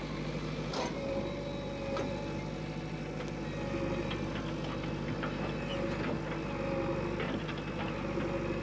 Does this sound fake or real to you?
real